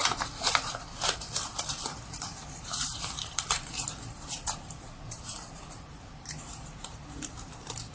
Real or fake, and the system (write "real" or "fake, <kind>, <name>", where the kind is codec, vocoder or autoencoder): fake, vocoder, BigVGAN v2